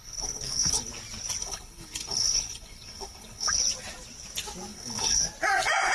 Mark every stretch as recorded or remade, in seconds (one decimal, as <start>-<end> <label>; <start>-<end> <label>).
0.0-0.9 remade; 0.9-1.4 recorded; 1.4-3.6 remade; 3.6-4.7 recorded; 4.7-5.2 remade; 5.2-5.9 recorded